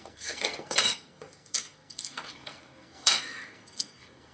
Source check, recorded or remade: remade